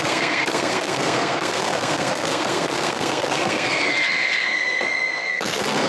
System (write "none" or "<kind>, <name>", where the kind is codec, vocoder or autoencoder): codec, SNAC